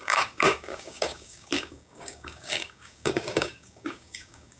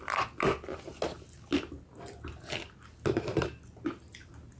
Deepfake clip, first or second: first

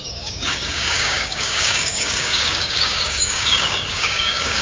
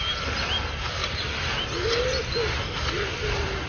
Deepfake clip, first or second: first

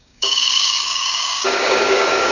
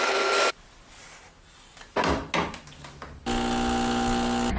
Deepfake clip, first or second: first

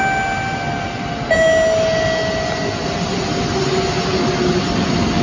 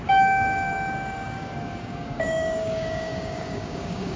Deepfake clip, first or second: second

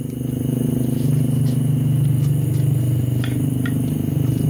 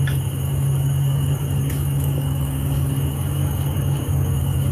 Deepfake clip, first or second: second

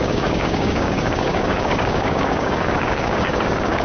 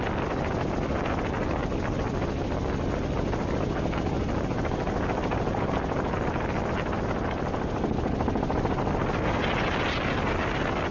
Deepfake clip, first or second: first